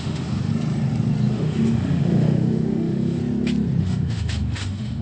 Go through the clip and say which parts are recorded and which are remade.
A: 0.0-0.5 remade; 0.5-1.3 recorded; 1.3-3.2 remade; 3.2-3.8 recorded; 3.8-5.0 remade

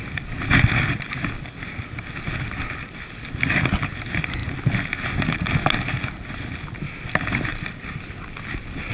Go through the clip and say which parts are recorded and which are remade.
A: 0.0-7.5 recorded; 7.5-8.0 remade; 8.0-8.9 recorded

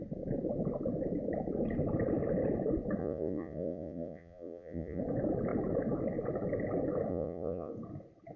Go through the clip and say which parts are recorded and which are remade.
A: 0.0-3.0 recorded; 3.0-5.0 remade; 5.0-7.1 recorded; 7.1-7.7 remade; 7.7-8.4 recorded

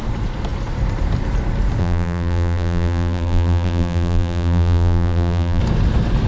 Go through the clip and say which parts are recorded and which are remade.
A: 0.0-1.8 recorded; 1.8-5.6 remade; 5.6-6.3 recorded